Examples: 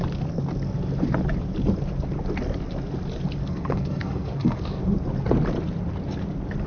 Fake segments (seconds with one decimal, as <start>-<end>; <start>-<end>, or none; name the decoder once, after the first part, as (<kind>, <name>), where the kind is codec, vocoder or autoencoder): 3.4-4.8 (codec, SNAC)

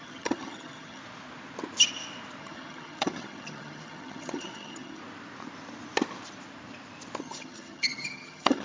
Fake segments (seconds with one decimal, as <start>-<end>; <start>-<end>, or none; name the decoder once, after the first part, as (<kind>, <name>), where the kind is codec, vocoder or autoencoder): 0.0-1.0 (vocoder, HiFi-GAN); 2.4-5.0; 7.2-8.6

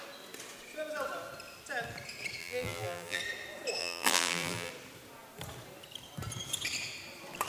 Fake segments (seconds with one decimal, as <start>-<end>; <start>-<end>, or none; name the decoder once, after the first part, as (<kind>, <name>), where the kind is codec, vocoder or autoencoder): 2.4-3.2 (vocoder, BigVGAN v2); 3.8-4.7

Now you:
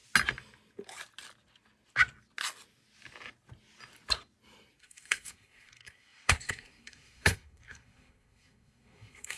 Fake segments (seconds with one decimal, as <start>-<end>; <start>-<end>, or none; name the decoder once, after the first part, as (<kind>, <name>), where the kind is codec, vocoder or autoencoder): 4.8-9.4 (codec, SNAC)

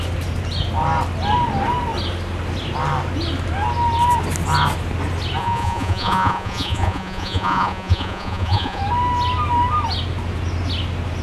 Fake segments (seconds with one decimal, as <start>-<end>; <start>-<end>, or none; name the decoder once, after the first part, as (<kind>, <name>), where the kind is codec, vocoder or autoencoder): 5.4-8.8 (vocoder, Vocos)

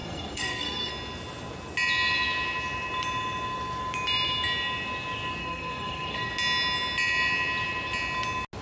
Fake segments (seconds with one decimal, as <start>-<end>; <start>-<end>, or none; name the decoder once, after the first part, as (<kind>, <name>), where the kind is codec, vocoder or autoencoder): 0.0-0.9 (codec, SNAC); 5.4-6.3